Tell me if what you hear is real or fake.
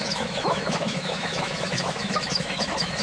fake